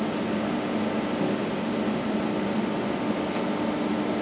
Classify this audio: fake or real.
real